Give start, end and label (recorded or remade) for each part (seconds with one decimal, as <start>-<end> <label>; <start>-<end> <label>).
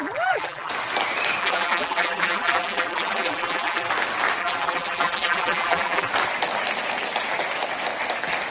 0.0-0.7 remade; 0.7-1.4 recorded; 1.4-3.9 remade; 3.9-4.4 recorded; 4.4-6.1 remade; 6.1-8.5 recorded